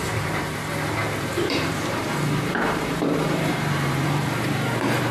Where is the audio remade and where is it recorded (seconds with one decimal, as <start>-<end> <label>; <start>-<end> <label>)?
0.0-5.1 remade